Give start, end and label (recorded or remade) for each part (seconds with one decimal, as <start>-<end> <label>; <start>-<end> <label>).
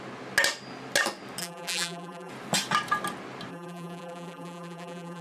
0.0-1.4 recorded; 1.4-2.3 remade; 2.3-3.5 recorded; 3.5-5.2 remade